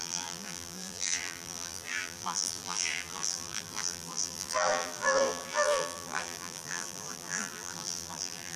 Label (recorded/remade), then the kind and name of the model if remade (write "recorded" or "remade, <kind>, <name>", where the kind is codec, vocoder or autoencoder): remade, vocoder, BigVGAN v2